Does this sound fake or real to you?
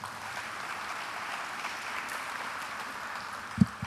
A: real